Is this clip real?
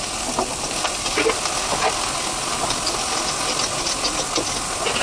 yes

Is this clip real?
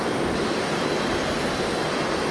yes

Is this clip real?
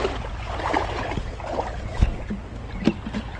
yes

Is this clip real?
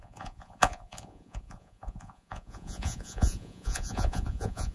no